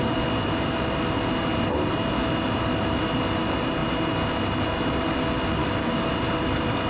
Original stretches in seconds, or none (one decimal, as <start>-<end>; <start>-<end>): 0.0-5.6; 6.1-6.9